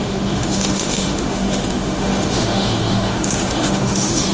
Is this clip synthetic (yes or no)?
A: yes